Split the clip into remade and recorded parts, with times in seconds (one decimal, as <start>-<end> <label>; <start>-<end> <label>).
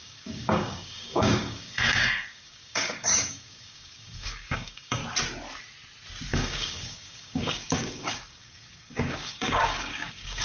0.0-5.0 remade; 5.0-6.3 recorded; 6.3-10.4 remade